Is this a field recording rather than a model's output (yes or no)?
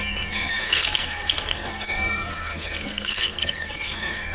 no